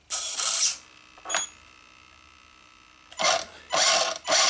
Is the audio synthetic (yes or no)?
yes